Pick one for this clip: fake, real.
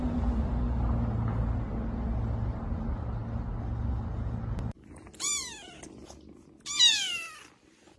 real